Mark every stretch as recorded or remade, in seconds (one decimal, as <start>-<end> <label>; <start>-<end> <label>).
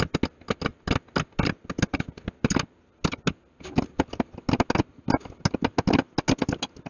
0.0-6.9 recorded